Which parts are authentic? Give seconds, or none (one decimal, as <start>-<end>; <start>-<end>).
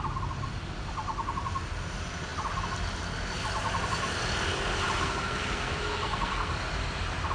0.0-5.0; 6.5-7.3